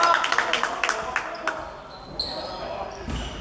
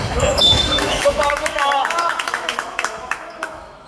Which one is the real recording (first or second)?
first